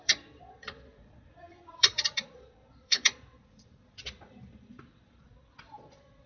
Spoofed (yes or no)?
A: yes